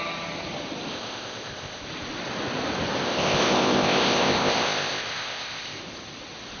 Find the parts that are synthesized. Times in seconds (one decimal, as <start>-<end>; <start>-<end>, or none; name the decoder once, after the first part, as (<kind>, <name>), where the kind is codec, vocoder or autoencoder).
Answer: 0.9-1.8 (codec, ZipCodec); 3.0-5.8